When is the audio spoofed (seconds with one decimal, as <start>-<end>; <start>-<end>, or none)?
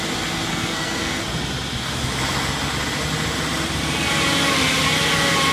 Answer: 0.5-1.2